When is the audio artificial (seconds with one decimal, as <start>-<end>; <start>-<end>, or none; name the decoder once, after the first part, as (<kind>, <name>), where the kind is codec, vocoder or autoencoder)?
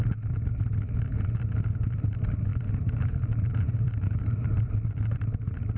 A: 2.5-4.7 (vocoder, BigVGAN v2)